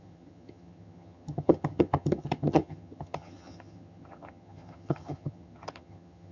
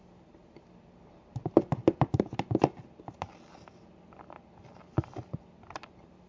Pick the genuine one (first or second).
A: second